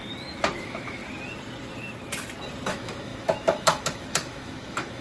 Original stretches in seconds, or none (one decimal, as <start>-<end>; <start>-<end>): 0.0-0.6; 1.0-2.7